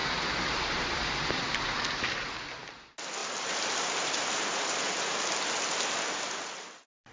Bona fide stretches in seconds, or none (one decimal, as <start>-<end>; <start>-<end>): 1.8-3.2; 4.6-7.1